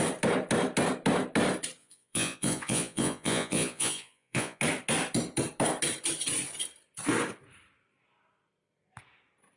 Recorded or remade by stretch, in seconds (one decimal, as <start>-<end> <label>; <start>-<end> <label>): 0.0-1.8 recorded; 1.8-4.6 remade; 4.6-9.6 recorded